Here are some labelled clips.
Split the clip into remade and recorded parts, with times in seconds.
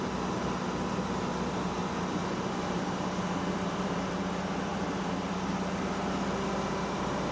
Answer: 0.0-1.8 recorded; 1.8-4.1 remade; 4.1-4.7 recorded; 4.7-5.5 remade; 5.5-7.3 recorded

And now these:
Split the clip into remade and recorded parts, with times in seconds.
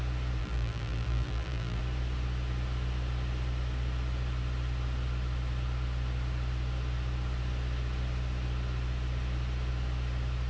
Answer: 0.0-0.4 recorded; 0.4-1.8 remade; 1.8-10.5 recorded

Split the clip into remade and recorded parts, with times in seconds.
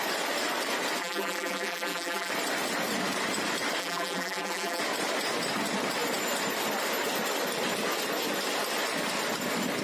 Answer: 0.0-1.0 recorded; 1.0-2.3 remade; 2.3-3.8 recorded; 3.8-4.8 remade; 4.8-9.8 recorded